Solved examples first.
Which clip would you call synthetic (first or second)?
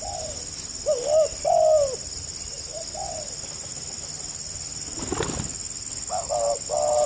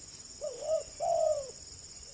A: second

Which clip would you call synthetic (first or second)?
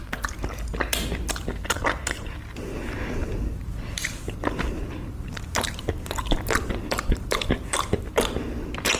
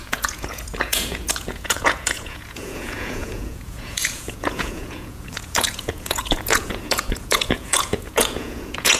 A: second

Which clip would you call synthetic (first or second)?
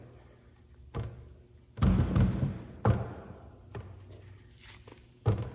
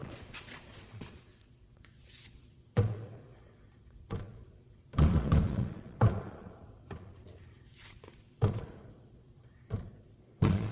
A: second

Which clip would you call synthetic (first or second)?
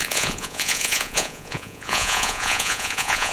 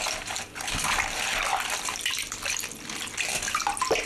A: first